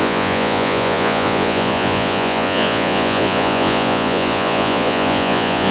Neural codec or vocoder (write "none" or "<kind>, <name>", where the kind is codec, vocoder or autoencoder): vocoder, Vocos